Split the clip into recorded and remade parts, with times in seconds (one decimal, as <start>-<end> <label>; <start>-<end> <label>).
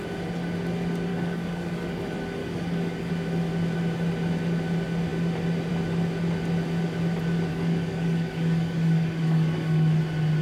0.0-1.1 recorded; 1.1-2.0 remade; 2.0-2.4 recorded; 2.4-3.1 remade; 3.1-7.5 recorded; 7.5-10.0 remade; 10.0-10.4 recorded